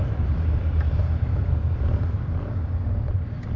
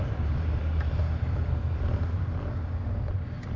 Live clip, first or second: second